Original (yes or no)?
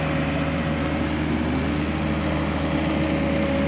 yes